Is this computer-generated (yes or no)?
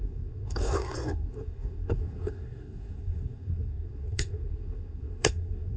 yes